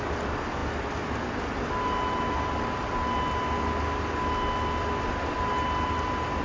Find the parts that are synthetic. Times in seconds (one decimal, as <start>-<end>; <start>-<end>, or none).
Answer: none